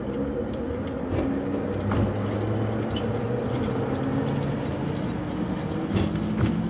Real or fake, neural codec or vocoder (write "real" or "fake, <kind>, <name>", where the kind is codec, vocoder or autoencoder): real